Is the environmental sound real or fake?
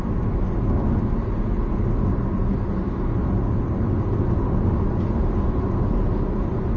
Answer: real